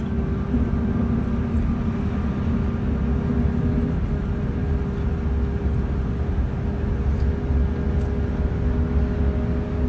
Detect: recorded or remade recorded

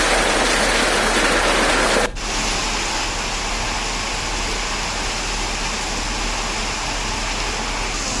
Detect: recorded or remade recorded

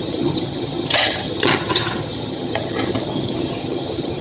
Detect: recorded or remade remade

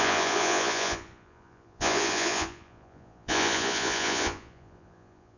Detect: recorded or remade remade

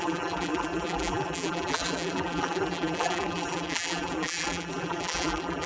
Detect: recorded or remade remade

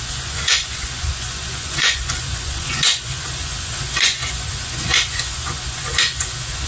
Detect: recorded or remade remade